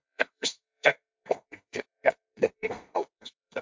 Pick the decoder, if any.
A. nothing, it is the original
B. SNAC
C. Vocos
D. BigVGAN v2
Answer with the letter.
B